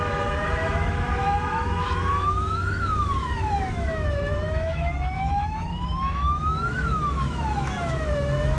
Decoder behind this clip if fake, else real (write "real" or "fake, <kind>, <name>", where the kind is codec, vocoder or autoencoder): fake, autoencoder, DAC-VAE